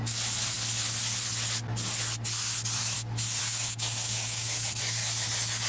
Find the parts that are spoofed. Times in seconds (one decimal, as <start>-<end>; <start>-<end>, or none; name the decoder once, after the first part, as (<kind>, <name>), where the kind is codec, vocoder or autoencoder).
3.4-5.0 (codec, DAC)